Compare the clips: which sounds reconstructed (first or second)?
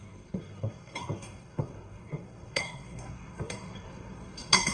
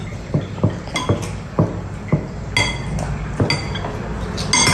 first